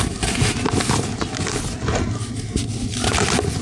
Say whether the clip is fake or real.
real